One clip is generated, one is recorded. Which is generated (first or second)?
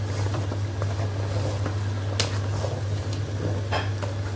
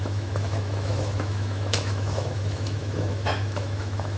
second